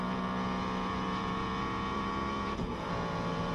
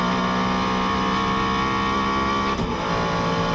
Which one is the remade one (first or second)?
first